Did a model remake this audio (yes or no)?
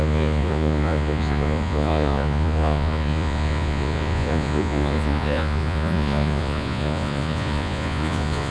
yes